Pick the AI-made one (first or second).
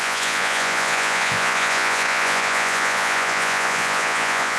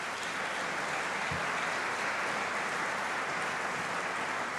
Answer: first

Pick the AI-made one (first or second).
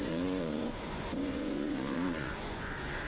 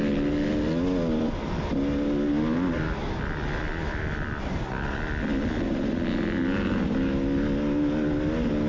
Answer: first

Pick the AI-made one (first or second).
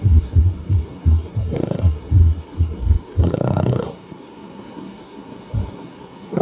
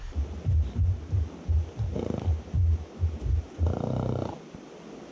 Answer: first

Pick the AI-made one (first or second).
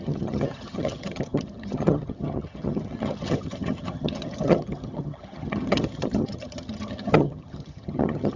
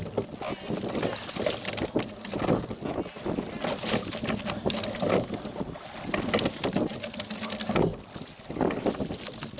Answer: first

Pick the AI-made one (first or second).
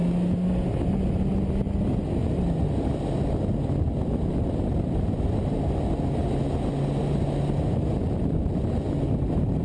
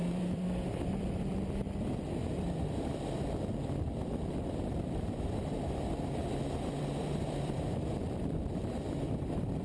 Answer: second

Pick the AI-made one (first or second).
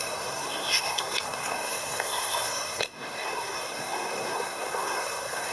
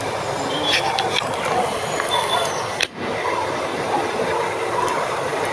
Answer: first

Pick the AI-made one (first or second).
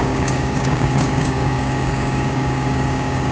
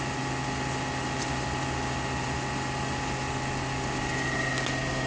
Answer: first